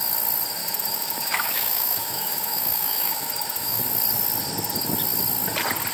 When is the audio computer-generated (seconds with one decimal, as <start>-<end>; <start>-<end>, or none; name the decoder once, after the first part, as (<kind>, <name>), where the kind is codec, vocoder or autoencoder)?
0.6-3.8 (autoencoder, DAC-VAE)